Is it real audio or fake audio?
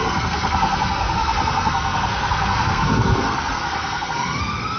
fake